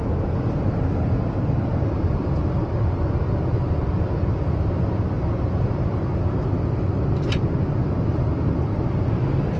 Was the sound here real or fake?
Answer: real